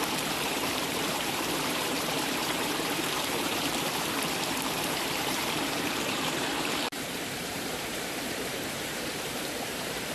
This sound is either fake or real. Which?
fake